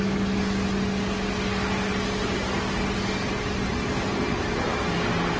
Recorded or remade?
recorded